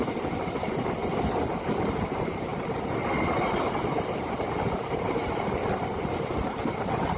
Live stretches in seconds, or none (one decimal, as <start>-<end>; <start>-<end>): 1.0-1.6; 2.5-3.7